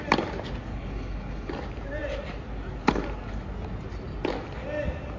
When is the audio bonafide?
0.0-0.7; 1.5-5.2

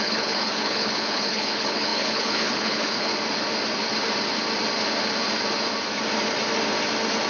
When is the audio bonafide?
3.1-7.3

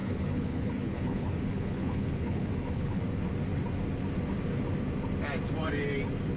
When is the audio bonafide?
3.0-6.4

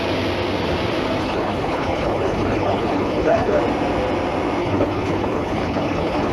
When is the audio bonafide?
0.0-1.2; 3.6-4.6

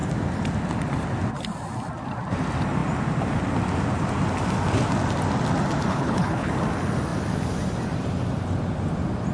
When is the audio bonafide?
0.0-5.9; 6.5-9.3

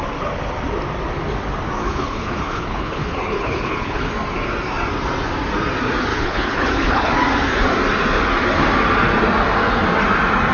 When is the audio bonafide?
0.0-1.8; 4.1-6.1; 7.1-10.5